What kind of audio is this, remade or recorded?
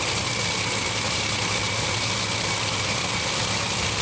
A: recorded